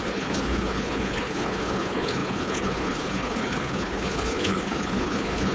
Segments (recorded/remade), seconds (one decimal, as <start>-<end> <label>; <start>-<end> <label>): 0.0-5.5 remade